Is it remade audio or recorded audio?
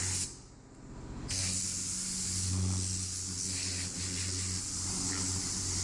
recorded